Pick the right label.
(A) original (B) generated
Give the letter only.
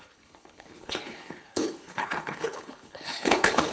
B